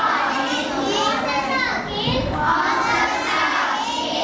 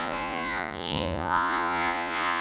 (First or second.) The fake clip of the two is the second